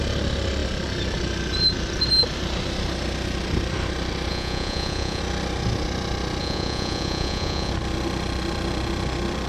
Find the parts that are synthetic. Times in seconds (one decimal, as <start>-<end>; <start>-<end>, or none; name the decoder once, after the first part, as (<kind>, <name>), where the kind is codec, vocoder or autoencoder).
4.3-5.2 (vocoder, Vocos); 6.4-7.7